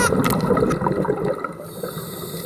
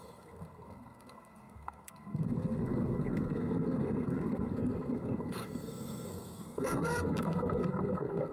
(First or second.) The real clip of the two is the first